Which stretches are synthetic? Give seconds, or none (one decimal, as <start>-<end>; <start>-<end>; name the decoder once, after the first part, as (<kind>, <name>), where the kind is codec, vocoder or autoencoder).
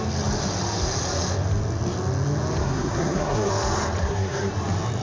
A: 2.6-3.5 (codec, SNAC); 4.0-4.5